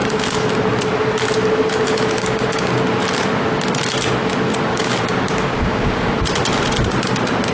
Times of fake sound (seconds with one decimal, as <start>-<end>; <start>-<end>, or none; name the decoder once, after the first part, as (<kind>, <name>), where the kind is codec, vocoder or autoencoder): 2.2-2.8 (codec, DAC); 4.7-6.1